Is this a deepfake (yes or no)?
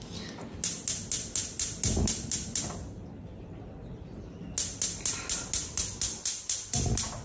no